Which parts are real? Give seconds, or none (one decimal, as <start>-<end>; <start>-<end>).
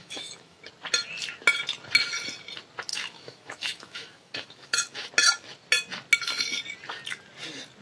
0.6-2.9; 5.1-7.8